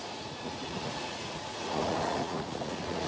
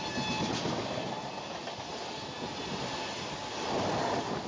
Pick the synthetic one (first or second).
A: first